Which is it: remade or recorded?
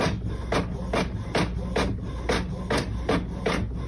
recorded